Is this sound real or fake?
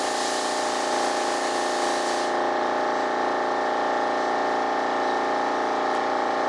real